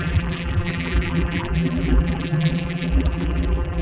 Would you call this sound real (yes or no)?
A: no